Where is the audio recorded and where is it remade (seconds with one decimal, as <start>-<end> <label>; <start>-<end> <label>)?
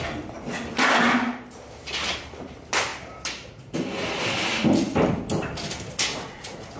0.0-6.1 recorded; 6.1-6.8 remade